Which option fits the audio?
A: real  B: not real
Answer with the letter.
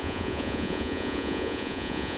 B